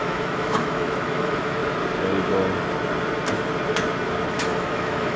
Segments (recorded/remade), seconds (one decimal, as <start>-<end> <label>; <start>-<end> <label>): 0.0-1.6 remade; 1.6-4.3 recorded; 4.3-5.2 remade